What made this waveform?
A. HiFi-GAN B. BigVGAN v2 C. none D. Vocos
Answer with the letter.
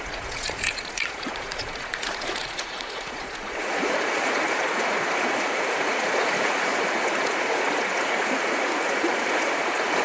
D